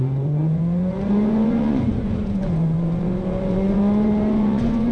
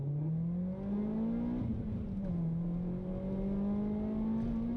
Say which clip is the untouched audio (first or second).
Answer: second